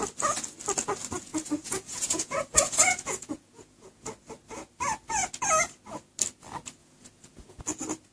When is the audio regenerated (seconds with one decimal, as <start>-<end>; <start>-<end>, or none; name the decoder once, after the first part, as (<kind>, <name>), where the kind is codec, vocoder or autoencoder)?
1.3-4.1 (vocoder, Vocos); 6.8-7.6